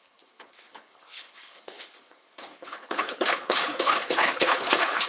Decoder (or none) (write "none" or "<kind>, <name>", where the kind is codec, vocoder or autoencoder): codec, HILCodec